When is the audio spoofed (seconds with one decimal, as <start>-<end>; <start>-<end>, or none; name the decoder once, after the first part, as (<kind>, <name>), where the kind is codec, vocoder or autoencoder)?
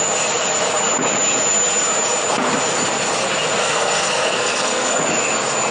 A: 3.6-5.0 (codec, SNAC)